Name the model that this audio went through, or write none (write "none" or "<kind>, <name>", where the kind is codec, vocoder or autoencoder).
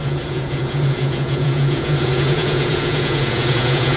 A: vocoder, Vocos